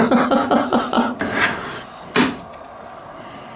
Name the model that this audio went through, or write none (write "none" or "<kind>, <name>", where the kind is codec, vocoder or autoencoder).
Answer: none